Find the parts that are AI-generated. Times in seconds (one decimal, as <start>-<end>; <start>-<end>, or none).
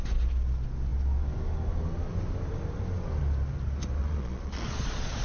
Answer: 4.0-5.2